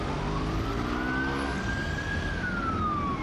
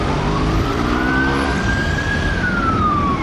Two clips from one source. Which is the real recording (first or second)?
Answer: first